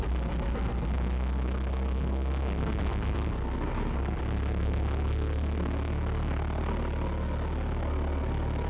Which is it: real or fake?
fake